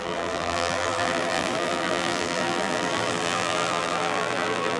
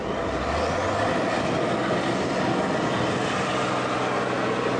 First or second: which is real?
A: second